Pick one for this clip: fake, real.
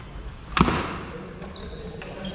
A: real